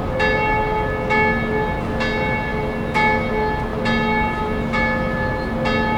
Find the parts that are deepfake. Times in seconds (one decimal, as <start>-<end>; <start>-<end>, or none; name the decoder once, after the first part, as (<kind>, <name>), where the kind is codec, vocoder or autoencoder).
none